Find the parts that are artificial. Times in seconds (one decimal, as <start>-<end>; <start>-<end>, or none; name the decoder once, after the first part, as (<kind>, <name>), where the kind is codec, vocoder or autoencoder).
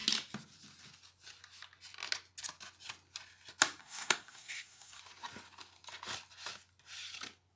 3.8-5.0 (codec, SNAC)